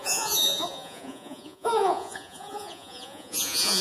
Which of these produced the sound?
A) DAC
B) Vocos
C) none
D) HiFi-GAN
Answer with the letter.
B